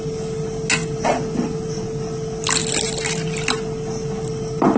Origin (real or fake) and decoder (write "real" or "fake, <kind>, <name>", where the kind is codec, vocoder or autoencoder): real